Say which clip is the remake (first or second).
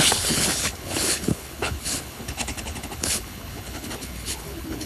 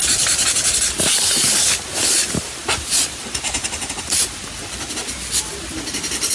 first